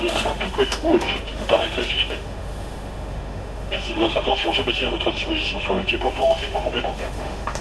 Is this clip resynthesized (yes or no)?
yes